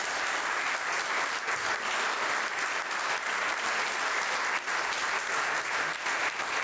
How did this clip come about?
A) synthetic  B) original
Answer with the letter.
B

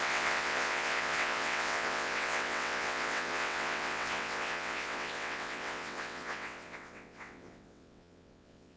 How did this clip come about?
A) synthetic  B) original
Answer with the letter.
A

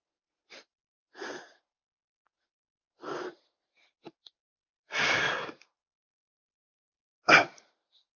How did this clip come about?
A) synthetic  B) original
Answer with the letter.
B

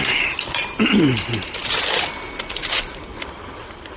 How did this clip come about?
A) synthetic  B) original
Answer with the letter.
B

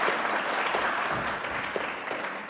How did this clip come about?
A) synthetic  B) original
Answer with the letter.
B